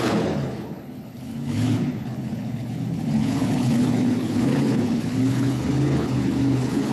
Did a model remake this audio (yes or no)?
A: yes